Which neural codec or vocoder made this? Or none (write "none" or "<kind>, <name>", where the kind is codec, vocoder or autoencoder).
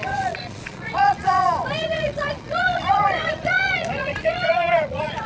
vocoder, Vocos